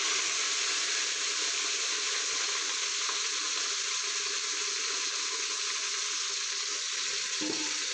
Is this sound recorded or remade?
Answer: recorded